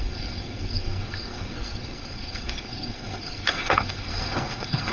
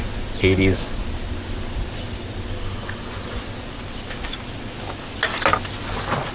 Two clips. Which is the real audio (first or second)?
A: second